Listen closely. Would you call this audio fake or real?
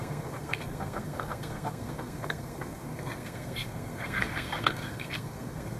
fake